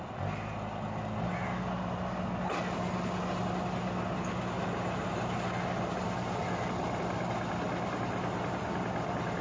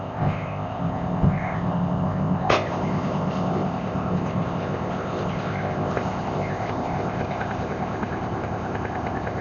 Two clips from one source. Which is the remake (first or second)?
second